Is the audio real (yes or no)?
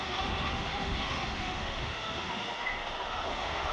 no